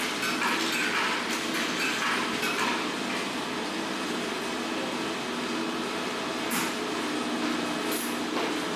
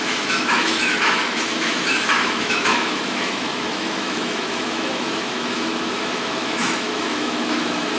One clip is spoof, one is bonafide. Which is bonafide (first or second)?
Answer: first